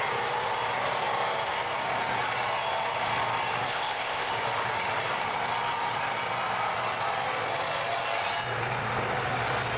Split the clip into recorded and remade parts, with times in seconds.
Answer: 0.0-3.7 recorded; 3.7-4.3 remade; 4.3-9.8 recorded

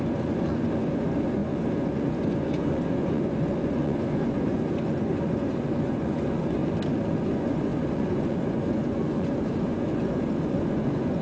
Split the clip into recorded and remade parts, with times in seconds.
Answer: 0.0-6.6 remade; 6.6-7.1 recorded; 7.1-11.2 remade

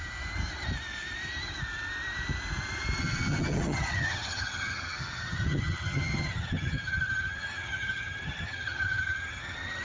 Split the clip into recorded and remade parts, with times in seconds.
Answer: 0.0-3.0 recorded; 3.0-9.8 remade

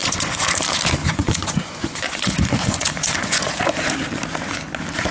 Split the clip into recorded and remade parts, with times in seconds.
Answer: 0.0-0.6 remade; 0.6-1.0 recorded; 1.0-3.6 remade; 3.6-5.1 recorded

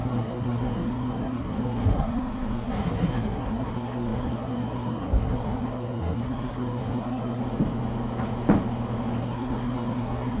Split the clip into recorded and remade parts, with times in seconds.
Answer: 0.0-7.4 remade; 7.4-9.2 recorded; 9.2-10.4 remade